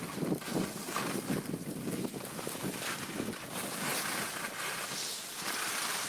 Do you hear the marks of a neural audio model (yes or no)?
no